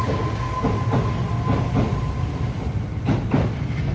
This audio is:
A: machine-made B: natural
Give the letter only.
B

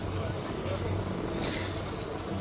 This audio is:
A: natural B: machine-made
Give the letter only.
A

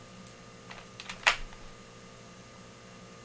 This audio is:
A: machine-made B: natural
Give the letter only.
B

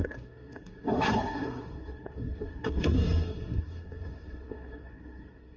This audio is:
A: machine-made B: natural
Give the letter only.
A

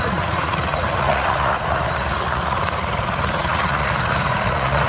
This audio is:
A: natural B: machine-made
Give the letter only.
B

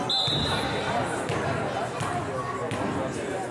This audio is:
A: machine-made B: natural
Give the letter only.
B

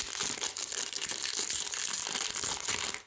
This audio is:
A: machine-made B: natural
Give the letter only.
B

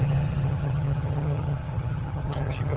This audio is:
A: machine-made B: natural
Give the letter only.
A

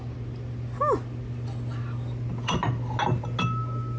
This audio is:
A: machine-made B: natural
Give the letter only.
B